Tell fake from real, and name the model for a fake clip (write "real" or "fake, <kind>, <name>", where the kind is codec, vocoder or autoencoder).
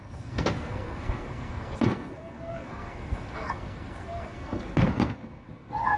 fake, codec, SNAC